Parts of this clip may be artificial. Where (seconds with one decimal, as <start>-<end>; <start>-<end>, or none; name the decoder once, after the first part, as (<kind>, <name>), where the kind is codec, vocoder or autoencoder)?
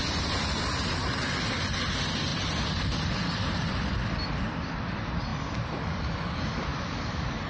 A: 2.3-3.9 (vocoder, BigVGAN v2); 5.3-6.0; 6.7-7.5